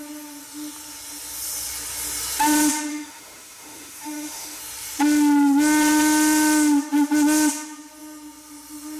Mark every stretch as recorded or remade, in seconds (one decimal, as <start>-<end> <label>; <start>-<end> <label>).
0.0-2.9 recorded; 2.9-4.6 remade; 4.6-9.0 recorded